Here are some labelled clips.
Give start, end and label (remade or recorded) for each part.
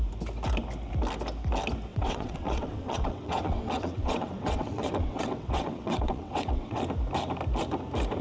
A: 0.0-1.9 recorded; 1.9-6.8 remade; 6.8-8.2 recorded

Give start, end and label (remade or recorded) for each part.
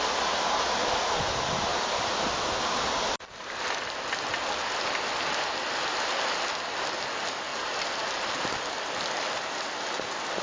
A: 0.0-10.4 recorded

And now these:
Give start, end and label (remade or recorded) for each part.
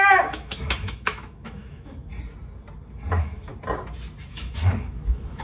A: 0.0-2.1 remade; 2.1-3.1 recorded; 3.1-3.5 remade; 3.5-4.3 recorded; 4.3-5.4 remade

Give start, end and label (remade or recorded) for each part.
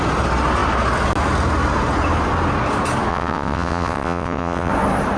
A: 0.0-3.1 recorded; 3.1-4.7 remade; 4.7-5.2 recorded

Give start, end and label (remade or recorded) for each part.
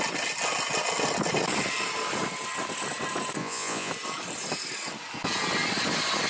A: 0.0-3.4 recorded; 3.4-3.9 remade; 3.9-6.3 recorded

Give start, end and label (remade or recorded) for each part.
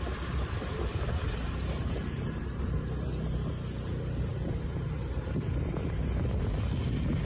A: 0.0-0.9 recorded; 0.9-2.6 remade; 2.6-4.3 recorded; 4.3-5.2 remade; 5.2-7.3 recorded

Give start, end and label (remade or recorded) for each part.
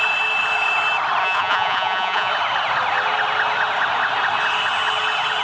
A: 0.0-1.2 recorded; 1.2-2.3 remade; 2.3-5.4 recorded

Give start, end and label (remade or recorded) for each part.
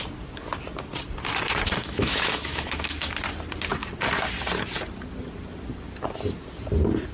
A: 0.0-1.8 recorded; 1.8-3.1 remade; 3.1-7.1 recorded